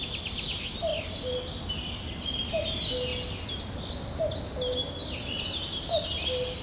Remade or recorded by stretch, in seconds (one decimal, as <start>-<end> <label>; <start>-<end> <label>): 0.0-6.6 recorded